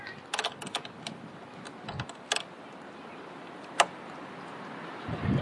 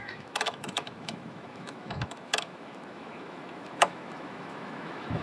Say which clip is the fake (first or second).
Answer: second